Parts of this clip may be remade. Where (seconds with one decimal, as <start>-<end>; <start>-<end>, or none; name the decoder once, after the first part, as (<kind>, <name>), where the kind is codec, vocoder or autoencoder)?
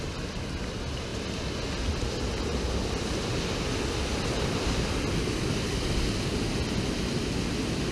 none